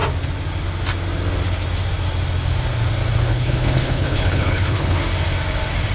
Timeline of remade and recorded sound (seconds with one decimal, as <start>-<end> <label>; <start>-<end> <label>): 0.0-3.3 recorded; 3.3-5.0 remade; 5.0-5.9 recorded